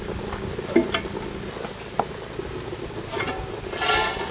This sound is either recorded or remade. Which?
recorded